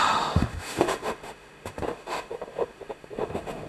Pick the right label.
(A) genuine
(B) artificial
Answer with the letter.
B